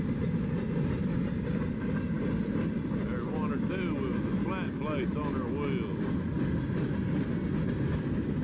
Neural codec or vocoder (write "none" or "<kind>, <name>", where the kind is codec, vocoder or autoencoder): none